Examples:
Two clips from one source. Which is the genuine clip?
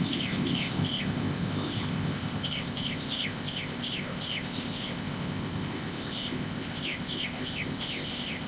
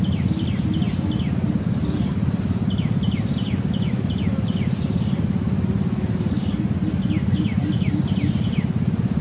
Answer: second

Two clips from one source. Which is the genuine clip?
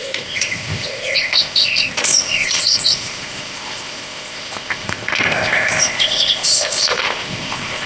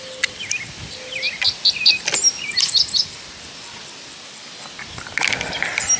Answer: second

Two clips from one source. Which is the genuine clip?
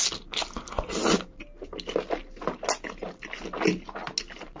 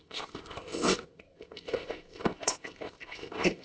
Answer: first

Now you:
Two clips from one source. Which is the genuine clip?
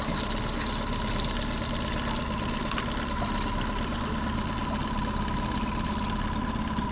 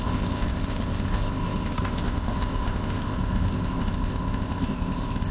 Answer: first